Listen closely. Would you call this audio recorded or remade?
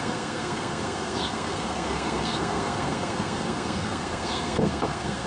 remade